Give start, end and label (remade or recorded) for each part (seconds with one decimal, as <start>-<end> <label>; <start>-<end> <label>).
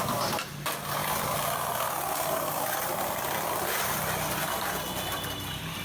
0.0-5.8 recorded